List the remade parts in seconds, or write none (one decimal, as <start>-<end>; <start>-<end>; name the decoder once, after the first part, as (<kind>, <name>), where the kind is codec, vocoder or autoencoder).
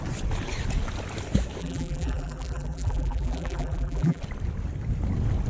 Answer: 1.6-4.2 (vocoder, BigVGAN v2)